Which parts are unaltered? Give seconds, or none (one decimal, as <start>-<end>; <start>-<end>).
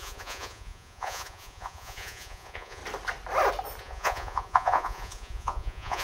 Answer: 2.8-3.8